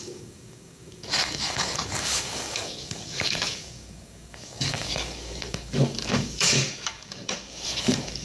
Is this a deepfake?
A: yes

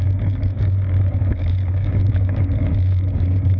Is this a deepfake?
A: yes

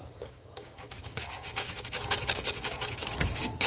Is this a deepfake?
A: yes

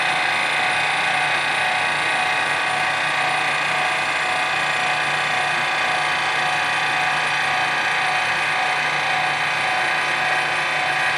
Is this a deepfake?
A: no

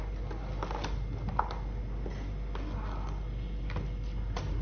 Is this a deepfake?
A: no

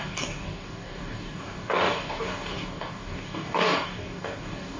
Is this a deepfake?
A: yes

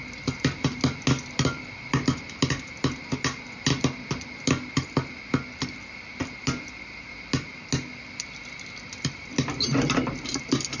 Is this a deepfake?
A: no